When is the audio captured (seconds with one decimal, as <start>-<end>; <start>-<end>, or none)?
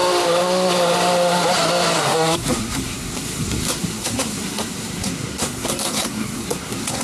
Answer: 0.0-2.0